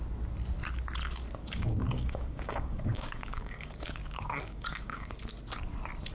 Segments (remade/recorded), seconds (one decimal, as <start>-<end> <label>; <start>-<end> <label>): 0.0-1.4 recorded; 1.4-5.1 remade; 5.1-6.1 recorded